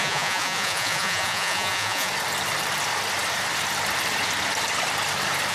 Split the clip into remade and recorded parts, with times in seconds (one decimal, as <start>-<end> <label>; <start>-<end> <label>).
0.0-2.1 remade; 2.1-5.5 recorded